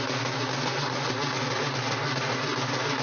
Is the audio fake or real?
real